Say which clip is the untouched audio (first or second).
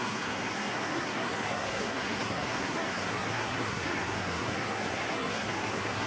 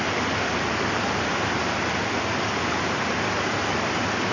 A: second